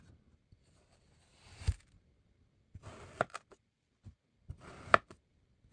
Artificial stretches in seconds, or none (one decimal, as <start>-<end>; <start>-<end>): none